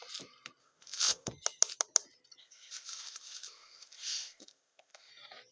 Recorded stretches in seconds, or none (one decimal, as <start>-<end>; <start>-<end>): 0.0-0.6; 1.3-2.4; 5.1-5.5